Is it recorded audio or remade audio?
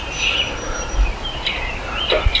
recorded